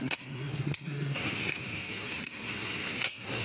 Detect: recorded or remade remade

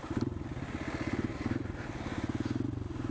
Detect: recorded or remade recorded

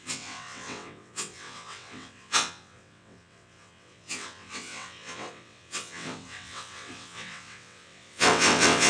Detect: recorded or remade remade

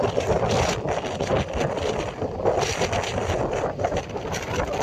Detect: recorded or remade recorded